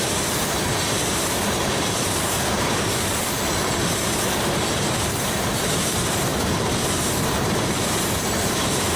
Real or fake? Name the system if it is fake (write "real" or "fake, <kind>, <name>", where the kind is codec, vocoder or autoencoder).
fake, vocoder, BigVGAN v2